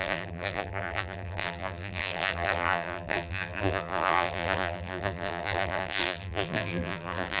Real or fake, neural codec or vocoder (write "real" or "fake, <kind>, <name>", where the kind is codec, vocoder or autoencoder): fake, vocoder, BigVGAN v2